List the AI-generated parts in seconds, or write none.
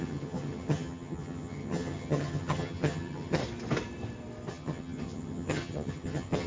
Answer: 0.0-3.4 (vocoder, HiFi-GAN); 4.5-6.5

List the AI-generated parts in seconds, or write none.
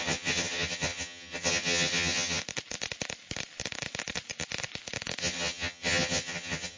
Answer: 0.0-2.4 (vocoder, HiFi-GAN); 5.2-6.8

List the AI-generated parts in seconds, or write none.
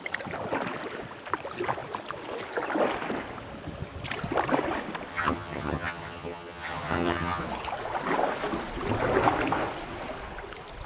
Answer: 5.1-7.4 (vocoder, HiFi-GAN)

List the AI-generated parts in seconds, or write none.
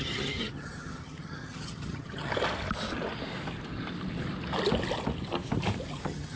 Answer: 0.0-2.3 (vocoder, HiFi-GAN); 5.9-6.4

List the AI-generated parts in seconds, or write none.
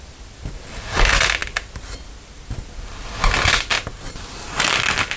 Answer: none